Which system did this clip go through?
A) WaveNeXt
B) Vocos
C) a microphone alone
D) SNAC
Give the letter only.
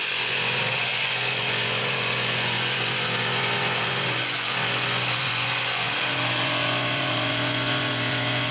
B